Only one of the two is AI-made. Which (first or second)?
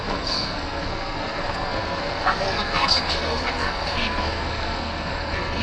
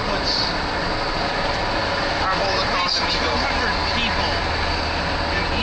first